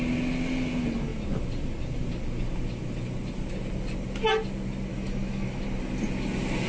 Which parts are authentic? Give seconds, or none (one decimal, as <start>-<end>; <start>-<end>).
0.0-4.9; 5.6-6.7